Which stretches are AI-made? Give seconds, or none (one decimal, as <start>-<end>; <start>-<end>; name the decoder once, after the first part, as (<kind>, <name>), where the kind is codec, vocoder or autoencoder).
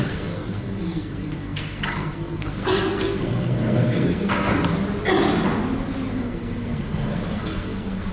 0.0-4.5 (codec, SNAC); 6.1-8.1